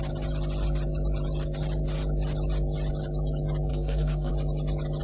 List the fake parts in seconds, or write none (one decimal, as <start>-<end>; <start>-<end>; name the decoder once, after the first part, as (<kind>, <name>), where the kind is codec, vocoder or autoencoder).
3.7-4.3 (codec, SNAC)